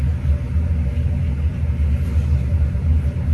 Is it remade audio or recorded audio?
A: recorded